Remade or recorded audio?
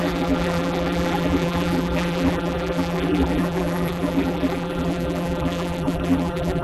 remade